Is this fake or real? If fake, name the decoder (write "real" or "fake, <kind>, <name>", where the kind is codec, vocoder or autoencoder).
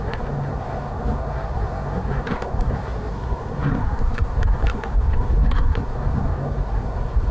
fake, codec, SNAC